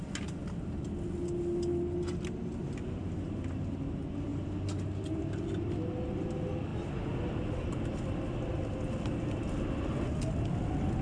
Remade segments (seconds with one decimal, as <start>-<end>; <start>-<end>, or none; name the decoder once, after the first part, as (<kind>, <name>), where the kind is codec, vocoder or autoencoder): none